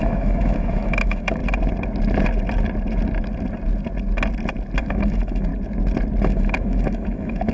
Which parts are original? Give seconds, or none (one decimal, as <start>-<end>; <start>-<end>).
1.4-4.8; 5.5-6.2

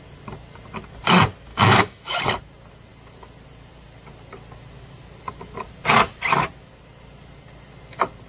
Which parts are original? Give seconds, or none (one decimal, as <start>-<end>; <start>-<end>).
0.0-1.5; 2.2-8.3

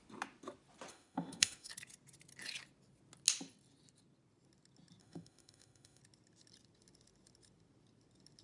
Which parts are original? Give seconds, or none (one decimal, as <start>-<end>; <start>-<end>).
0.0-0.9; 1.7-5.0; 6.0-8.4

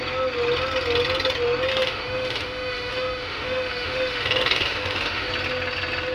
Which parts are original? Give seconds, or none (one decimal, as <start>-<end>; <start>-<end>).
0.0-1.7; 5.3-6.1

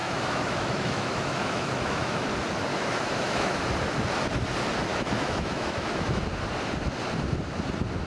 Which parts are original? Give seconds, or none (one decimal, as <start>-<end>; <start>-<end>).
2.3-2.7; 3.6-4.9; 6.2-8.1